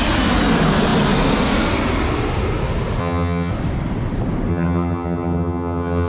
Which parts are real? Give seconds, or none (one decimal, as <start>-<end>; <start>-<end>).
0.0-3.0; 3.5-4.5